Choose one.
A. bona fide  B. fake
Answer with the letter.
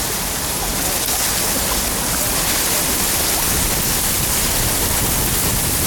A